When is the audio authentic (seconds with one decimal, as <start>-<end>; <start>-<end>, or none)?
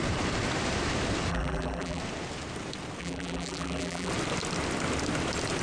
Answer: 0.0-1.3; 2.0-3.0; 4.1-5.6